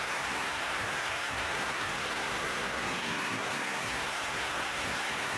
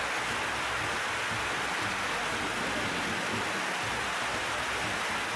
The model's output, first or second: first